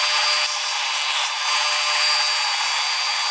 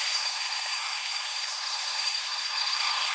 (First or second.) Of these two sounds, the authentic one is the first